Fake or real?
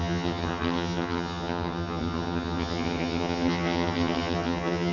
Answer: fake